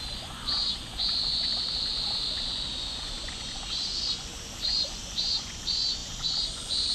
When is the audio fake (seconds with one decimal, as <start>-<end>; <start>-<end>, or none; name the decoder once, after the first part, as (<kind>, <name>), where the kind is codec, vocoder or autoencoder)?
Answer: 0.0-6.9 (vocoder, Vocos)